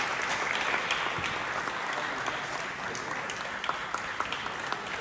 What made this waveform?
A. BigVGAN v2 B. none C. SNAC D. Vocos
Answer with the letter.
B